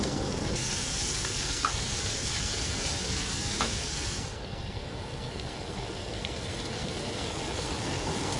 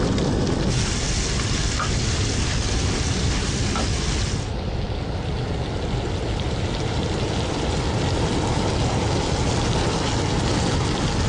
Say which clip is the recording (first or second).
second